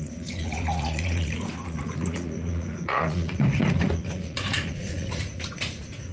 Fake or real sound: fake